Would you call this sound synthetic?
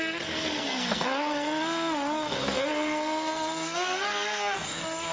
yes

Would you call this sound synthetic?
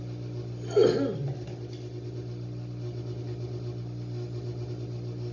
no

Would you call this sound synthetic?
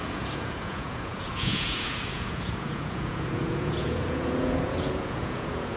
yes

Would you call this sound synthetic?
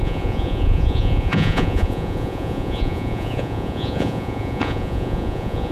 yes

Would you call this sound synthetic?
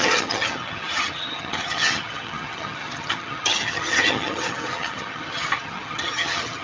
yes